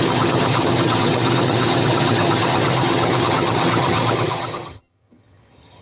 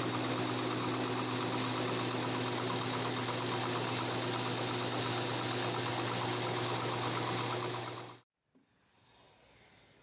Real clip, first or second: second